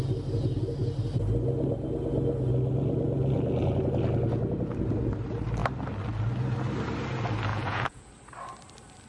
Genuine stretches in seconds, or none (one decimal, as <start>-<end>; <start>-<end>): 0.0-7.5; 8.1-9.1